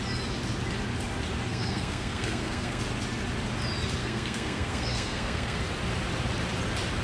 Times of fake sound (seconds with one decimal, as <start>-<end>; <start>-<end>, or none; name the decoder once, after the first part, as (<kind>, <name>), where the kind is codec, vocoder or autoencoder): 1.5-2.8 (codec, SNAC); 4.0-5.6